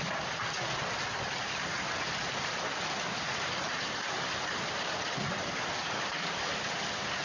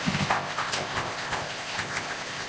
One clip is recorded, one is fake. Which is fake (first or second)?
second